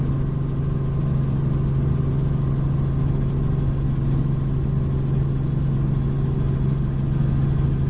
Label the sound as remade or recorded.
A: recorded